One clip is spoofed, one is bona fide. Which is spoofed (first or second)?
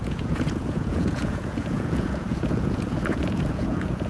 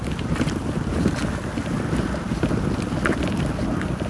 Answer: first